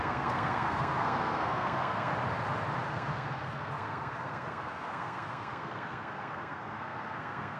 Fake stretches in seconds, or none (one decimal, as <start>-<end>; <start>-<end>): 0.0-2.1; 2.9-7.6